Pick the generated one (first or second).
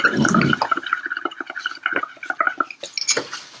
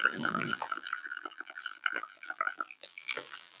second